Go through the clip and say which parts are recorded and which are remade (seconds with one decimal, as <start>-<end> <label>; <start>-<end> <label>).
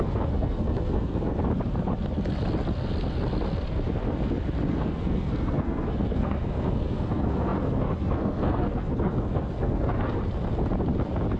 0.0-1.4 remade; 1.4-4.7 recorded; 4.7-10.2 remade; 10.2-11.4 recorded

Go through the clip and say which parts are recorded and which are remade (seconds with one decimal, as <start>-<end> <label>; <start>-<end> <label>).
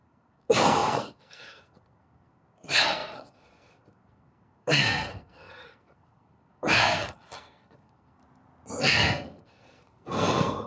0.0-8.2 remade; 8.2-8.8 recorded; 8.8-10.7 remade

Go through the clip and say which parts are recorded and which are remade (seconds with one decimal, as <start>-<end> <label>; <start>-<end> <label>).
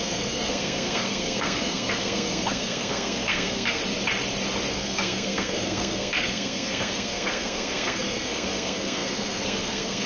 0.0-3.8 remade; 3.8-4.7 recorded; 4.7-10.1 remade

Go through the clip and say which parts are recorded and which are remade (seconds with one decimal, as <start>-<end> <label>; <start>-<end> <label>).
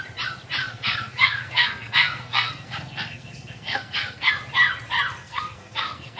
0.0-0.6 recorded; 0.6-4.3 remade; 4.3-5.2 recorded; 5.2-6.2 remade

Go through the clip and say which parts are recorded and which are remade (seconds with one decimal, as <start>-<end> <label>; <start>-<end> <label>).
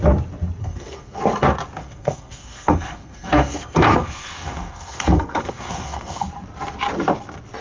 0.0-0.6 recorded; 0.6-1.2 remade; 1.2-1.8 recorded; 1.8-6.3 remade; 6.3-7.6 recorded